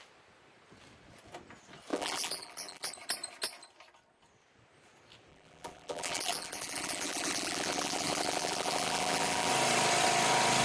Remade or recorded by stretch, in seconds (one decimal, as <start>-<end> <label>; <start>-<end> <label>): 0.0-1.9 recorded; 1.9-2.9 remade; 2.9-5.3 recorded; 5.3-9.5 remade; 9.5-10.6 recorded